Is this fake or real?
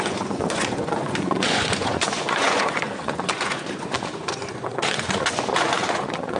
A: fake